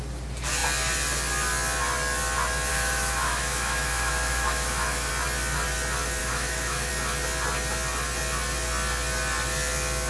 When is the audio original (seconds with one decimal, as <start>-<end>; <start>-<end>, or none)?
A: 0.0-2.7; 5.1-6.2; 6.9-10.1